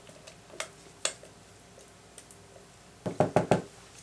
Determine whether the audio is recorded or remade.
recorded